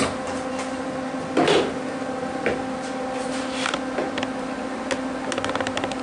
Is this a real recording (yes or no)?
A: yes